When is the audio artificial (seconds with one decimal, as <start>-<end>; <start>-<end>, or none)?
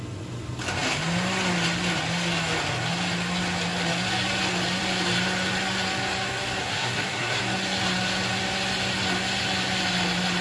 6.6-7.4